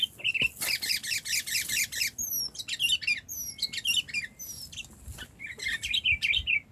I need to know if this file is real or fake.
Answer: real